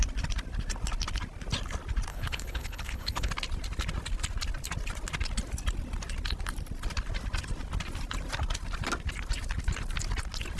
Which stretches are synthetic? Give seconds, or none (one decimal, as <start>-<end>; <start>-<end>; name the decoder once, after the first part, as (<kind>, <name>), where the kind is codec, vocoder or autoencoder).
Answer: 2.1-3.3 (codec, HILCodec)